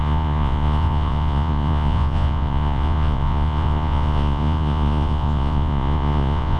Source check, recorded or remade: remade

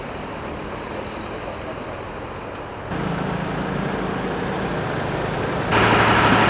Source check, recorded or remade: recorded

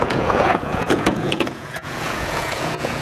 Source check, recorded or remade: remade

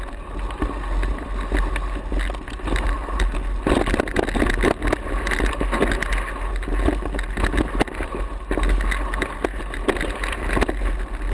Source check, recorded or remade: recorded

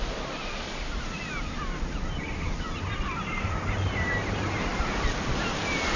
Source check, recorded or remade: recorded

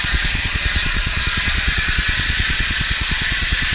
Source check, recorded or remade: remade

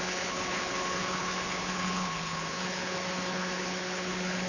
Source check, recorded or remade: remade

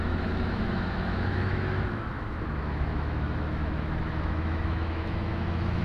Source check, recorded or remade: remade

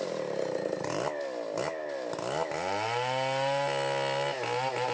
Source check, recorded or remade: recorded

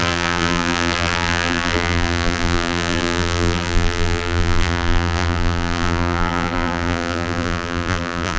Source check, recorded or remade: remade